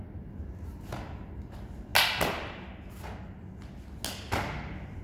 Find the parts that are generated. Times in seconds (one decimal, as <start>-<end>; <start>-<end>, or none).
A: none